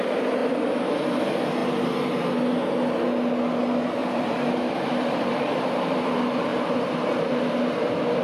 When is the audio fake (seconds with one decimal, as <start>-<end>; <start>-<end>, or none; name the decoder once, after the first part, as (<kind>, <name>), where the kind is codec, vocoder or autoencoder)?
4.0-5.5 (vocoder, BigVGAN v2)